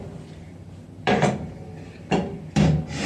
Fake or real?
fake